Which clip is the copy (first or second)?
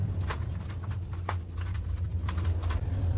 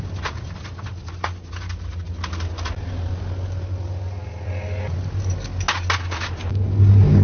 first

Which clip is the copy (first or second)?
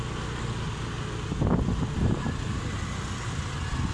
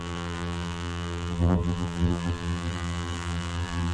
second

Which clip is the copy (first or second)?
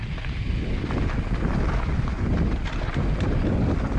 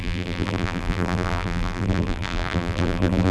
second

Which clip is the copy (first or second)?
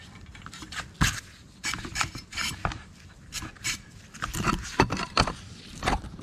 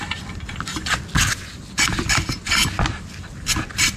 first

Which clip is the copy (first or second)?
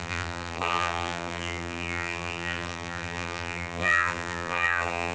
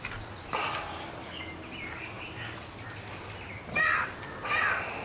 first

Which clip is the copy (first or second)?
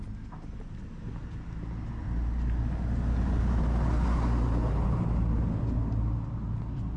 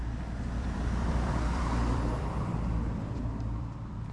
second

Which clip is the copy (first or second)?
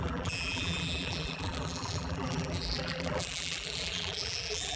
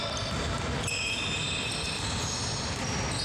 first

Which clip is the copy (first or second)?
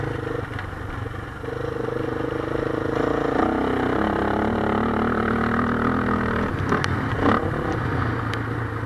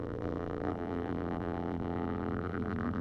second